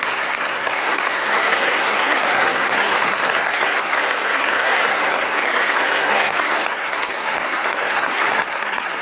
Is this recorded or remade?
remade